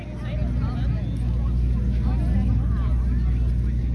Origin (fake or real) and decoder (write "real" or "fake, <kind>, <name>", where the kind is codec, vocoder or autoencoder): real